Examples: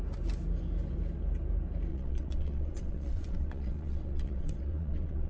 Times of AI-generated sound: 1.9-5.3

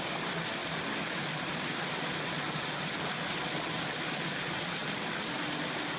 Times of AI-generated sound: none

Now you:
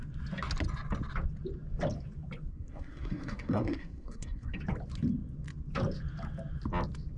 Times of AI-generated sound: 2.5-4.6

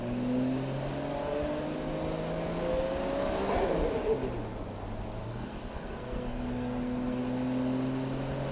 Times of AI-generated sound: 5.2-7.2

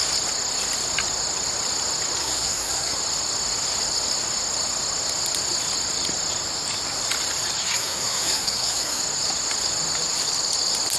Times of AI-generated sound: 2.2-3.0; 7.6-9.0